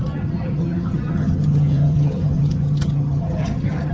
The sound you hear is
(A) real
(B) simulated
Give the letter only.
B